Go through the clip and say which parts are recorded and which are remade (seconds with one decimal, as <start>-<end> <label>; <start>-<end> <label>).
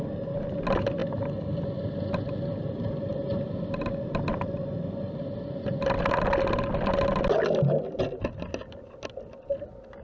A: 0.0-10.0 recorded